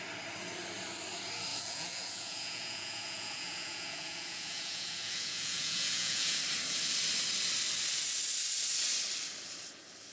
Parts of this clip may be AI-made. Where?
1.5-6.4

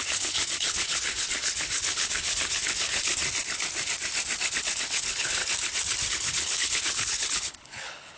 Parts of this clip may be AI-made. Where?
0.0-3.2; 4.6-5.4; 6.1-8.2

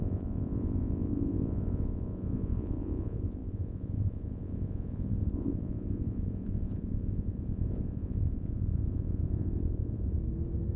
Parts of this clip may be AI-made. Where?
0.0-10.2

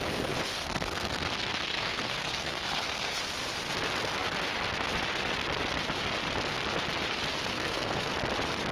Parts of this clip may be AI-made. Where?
0.5-3.2; 7.5-8.1

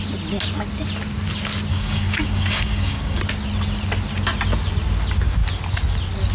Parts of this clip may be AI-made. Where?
1.7-3.2

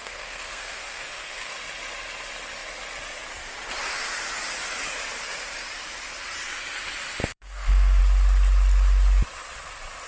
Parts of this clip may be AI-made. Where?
0.0-1.5; 7.2-8.0

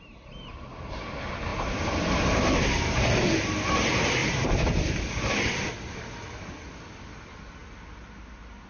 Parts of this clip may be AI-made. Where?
1.5-2.8; 4.2-7.1